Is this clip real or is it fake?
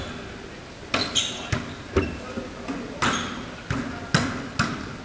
real